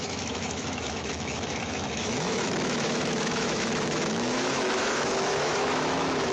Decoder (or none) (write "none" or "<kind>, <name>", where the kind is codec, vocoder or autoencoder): autoencoder, DAC-VAE